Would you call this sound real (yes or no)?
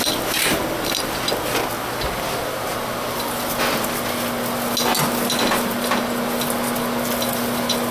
yes